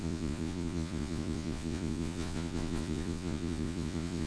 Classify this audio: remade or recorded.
remade